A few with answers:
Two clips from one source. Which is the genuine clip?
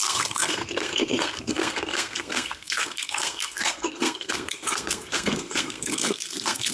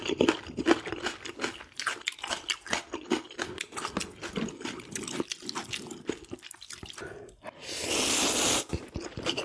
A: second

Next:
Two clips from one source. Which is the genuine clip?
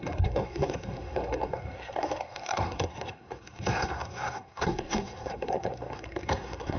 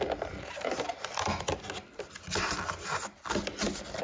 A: second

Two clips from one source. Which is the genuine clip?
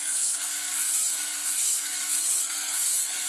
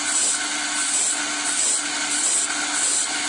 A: second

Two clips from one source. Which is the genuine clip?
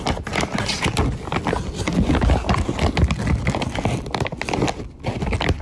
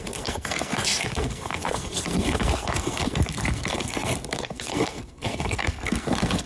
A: first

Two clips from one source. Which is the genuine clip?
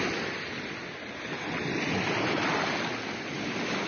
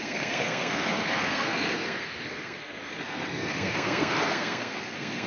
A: first